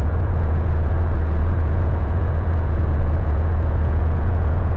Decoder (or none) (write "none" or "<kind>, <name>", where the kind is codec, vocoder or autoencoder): vocoder, Vocos